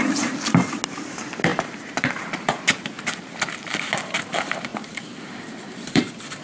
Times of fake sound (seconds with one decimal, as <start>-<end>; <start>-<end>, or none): 1.5-2.6; 4.7-6.0